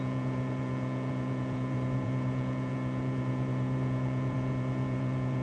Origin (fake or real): fake